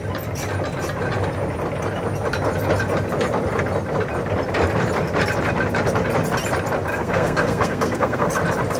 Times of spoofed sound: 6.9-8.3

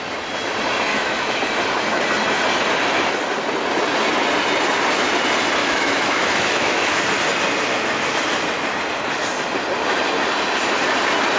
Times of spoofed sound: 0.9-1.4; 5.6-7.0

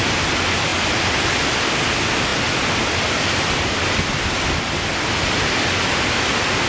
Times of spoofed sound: none

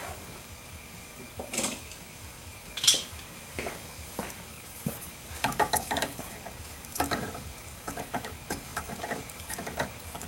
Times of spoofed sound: 0.0-10.3

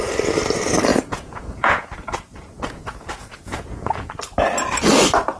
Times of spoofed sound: 0.9-4.1